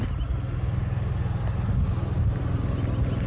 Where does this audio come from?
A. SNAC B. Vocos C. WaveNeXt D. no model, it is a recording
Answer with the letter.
D